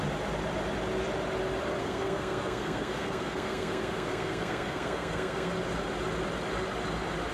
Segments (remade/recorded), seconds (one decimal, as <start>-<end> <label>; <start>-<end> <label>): 0.0-1.8 recorded; 1.8-5.5 remade; 5.5-7.3 recorded